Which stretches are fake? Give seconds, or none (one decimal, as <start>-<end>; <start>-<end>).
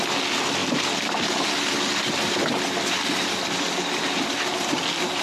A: none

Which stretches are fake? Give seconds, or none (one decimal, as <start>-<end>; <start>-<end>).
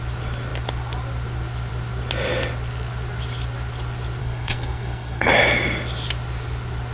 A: 4.2-5.3